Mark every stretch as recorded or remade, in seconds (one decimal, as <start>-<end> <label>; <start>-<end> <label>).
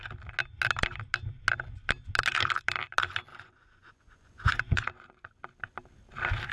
0.0-3.3 recorded; 3.3-5.3 remade; 5.3-6.5 recorded